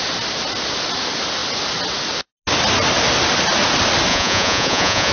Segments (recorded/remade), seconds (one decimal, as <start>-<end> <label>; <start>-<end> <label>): 0.0-4.1 recorded; 4.1-5.1 remade